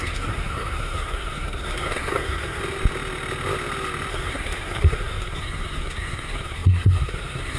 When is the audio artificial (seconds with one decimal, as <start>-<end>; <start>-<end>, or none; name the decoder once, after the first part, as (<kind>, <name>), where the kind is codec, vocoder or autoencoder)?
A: 0.0-2.6 (codec, SNAC); 4.1-7.6